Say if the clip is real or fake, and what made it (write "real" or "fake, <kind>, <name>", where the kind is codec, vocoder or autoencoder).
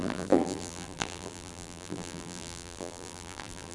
fake, vocoder, BigVGAN v2